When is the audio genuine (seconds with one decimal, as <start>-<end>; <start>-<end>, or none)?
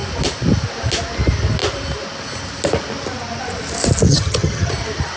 0.0-4.1; 4.7-5.2